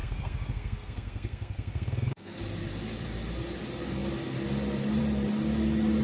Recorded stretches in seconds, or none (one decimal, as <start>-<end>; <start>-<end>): 2.4-6.0